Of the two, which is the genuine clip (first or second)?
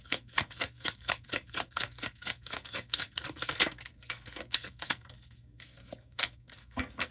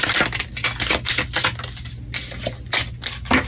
second